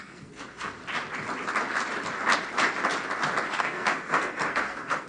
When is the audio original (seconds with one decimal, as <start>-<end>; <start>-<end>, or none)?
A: 0.8-3.5